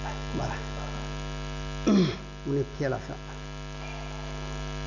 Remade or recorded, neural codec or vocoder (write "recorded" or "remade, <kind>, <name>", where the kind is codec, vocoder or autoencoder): recorded